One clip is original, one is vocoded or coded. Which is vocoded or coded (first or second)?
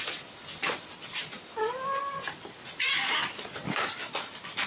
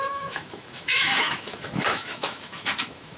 second